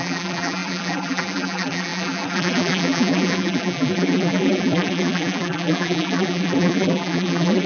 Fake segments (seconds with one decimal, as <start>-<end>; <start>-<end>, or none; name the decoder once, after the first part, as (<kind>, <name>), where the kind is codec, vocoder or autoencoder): 0.0-7.7 (vocoder, BigVGAN v2)